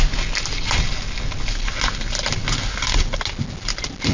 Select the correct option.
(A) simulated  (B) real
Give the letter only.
B